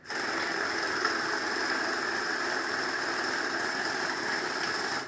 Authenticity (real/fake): real